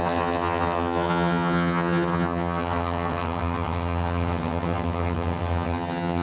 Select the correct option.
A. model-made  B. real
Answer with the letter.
A